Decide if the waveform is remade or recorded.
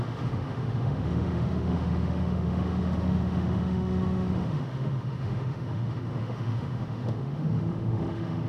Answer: remade